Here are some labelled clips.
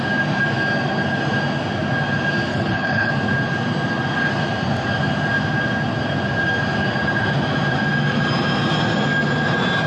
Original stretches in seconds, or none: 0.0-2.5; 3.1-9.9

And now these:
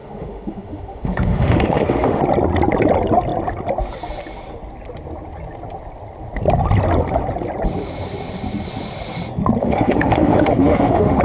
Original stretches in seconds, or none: 2.2-9.6

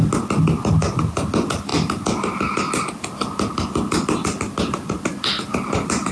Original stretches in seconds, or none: 0.0-6.1

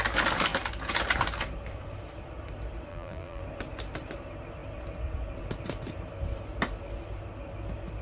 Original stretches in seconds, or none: 0.0-2.9; 3.4-8.0